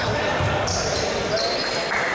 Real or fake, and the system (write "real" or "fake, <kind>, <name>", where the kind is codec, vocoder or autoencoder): real